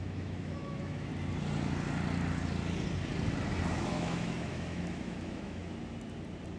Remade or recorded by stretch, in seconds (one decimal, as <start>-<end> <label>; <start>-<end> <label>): 0.0-1.1 remade; 1.1-3.7 recorded; 3.7-5.6 remade; 5.6-6.6 recorded